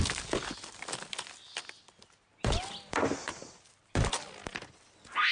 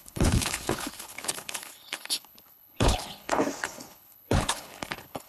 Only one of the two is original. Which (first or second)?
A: first